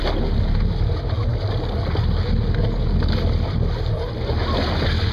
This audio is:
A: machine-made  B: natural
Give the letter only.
B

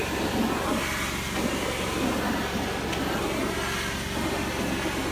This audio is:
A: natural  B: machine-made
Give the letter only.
A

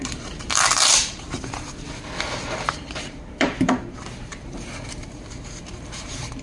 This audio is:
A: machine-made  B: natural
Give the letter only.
A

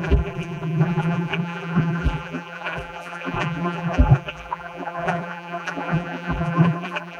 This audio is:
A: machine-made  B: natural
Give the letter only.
A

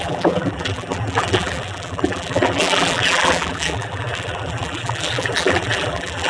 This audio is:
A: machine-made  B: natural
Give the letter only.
A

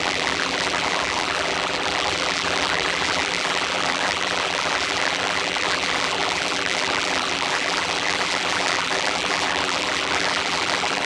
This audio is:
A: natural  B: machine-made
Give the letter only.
B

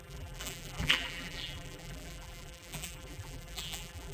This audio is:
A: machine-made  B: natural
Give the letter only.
A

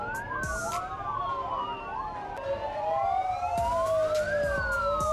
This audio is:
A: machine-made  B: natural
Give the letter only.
B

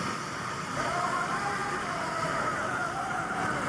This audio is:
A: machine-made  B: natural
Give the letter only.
A